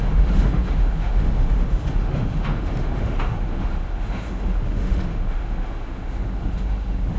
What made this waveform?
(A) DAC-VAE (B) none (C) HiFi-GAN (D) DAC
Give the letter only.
A